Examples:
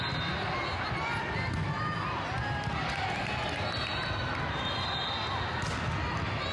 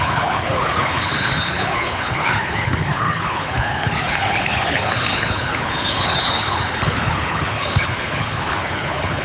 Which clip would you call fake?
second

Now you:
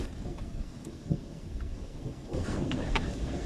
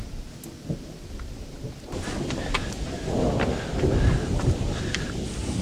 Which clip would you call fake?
first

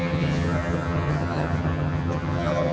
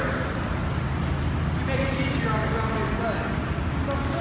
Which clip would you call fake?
first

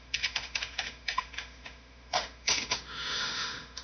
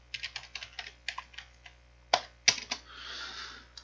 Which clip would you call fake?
first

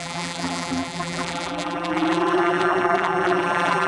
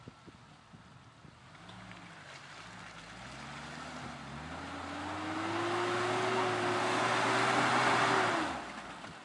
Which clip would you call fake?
first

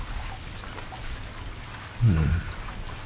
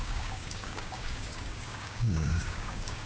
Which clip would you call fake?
second